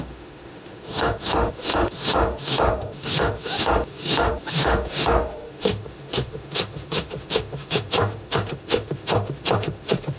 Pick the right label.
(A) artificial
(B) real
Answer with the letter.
A